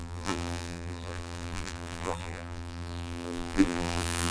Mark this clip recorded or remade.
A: remade